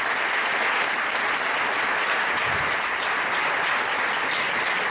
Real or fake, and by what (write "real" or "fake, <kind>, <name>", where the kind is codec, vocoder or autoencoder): real